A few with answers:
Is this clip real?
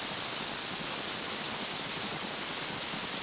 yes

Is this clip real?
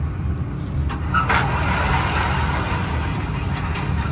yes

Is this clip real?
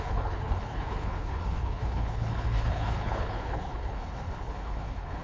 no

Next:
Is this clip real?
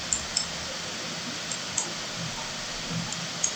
yes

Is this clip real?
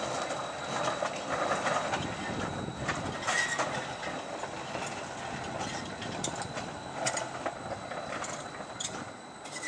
yes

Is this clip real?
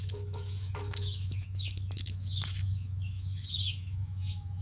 no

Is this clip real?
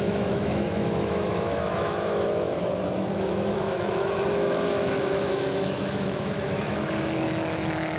no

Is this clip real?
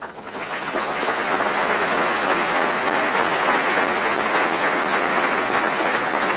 no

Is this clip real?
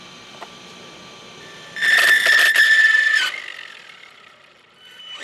yes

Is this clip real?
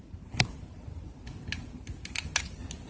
yes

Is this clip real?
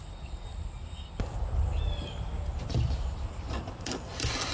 yes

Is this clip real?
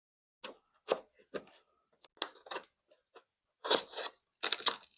yes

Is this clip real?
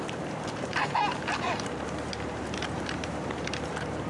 no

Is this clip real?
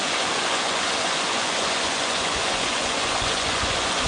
no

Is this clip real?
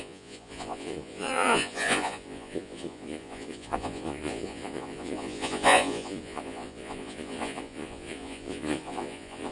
no